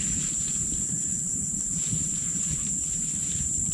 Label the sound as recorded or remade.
remade